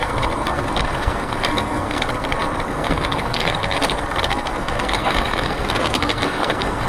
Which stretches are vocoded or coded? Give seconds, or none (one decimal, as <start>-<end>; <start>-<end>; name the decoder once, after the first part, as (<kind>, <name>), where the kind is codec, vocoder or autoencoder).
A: 0.0-6.9 (codec, SNAC)